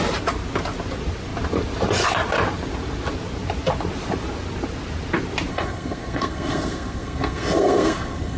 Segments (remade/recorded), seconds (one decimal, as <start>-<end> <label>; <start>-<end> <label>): 0.0-5.5 recorded; 5.5-8.4 remade